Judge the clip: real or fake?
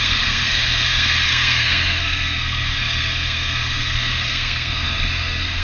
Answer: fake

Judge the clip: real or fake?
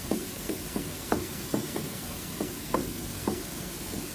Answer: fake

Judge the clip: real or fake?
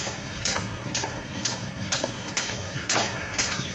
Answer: fake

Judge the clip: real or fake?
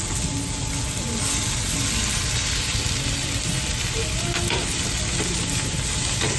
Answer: real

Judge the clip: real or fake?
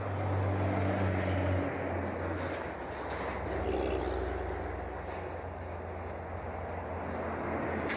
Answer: real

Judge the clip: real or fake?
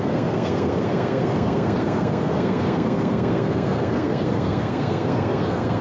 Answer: fake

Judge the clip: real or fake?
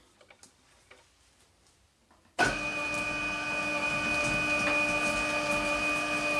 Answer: real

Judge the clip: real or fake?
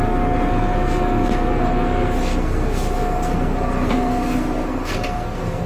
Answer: fake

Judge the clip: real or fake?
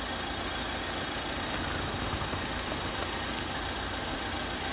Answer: real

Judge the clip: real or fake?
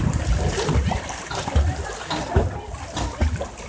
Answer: real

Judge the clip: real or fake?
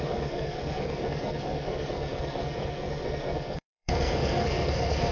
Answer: fake